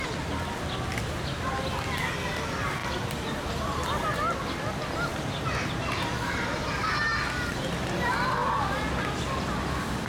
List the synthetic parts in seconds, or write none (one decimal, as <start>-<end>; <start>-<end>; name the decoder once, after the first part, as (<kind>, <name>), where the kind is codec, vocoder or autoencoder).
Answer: 2.8-3.5 (vocoder, BigVGAN v2)

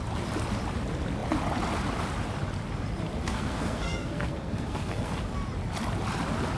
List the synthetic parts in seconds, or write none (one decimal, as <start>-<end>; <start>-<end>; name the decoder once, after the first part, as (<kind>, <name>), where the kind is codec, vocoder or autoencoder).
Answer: 3.2-5.2 (codec, SNAC)

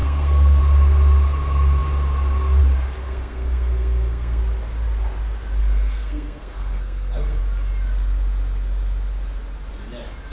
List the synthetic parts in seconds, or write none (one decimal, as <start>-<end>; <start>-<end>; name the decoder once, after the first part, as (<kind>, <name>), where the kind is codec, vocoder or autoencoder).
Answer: 0.0-0.6 (codec, SNAC); 3.0-4.4; 5.6-7.4

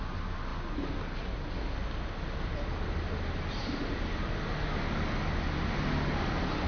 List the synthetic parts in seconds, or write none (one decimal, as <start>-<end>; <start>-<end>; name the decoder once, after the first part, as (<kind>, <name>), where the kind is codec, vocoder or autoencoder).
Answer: none